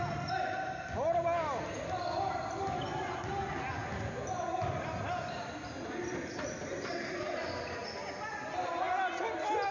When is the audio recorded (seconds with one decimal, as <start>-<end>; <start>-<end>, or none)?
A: 0.0-9.7